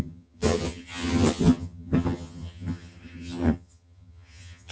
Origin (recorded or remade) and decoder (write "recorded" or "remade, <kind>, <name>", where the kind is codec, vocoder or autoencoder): remade, vocoder, HiFi-GAN